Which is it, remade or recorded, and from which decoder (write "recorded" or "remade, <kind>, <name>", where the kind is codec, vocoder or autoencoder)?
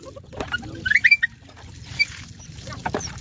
recorded